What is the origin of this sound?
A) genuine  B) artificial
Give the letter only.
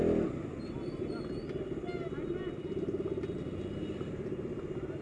A